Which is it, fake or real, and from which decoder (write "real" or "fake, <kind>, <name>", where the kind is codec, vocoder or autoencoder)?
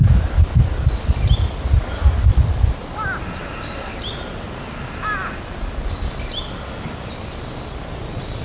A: real